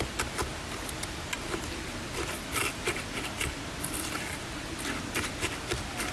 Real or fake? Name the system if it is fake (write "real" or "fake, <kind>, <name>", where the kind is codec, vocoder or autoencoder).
real